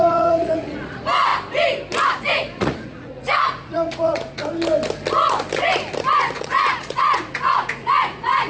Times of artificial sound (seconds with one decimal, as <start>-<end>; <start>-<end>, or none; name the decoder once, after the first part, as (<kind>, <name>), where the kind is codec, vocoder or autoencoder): 0.0-1.3 (vocoder, Vocos); 2.2-4.4; 6.2-8.5